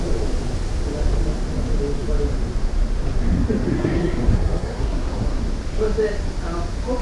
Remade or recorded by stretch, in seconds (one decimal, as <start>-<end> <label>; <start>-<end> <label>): 0.0-3.7 recorded; 3.7-5.4 remade; 5.4-7.0 recorded